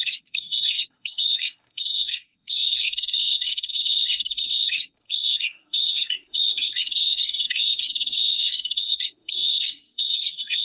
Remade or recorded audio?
remade